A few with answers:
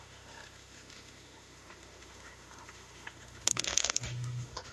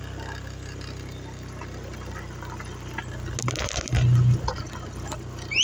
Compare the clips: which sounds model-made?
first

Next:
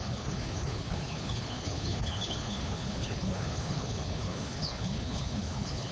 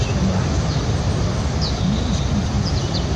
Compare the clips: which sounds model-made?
first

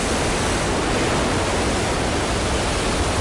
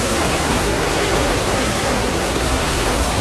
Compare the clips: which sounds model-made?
second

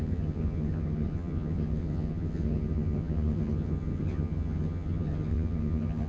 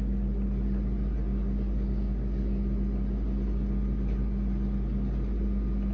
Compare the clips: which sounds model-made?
first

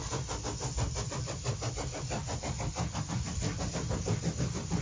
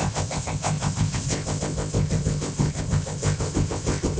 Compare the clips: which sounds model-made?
second